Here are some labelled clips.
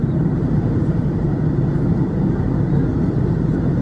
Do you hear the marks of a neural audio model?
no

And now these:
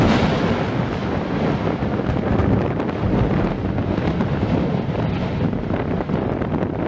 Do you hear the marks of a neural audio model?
no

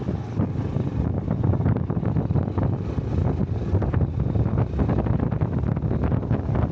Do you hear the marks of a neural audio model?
no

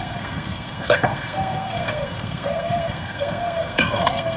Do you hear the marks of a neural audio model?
yes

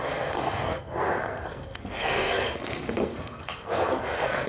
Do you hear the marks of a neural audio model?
yes